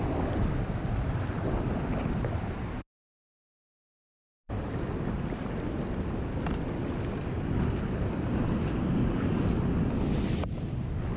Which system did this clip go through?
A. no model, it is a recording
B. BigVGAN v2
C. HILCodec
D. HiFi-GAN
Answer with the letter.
A